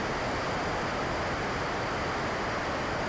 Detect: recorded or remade recorded